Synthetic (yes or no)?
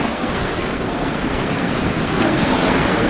yes